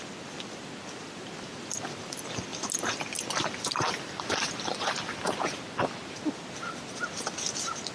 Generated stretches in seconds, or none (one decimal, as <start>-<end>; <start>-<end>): none